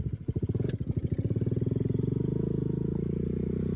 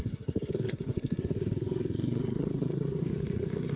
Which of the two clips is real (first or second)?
first